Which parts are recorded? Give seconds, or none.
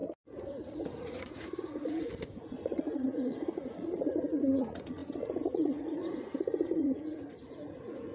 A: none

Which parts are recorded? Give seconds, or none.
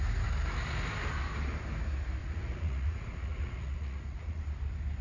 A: 0.0-2.2; 4.4-5.0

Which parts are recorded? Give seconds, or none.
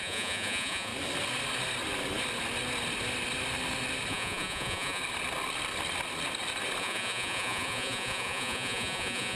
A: 0.9-4.1; 5.0-6.8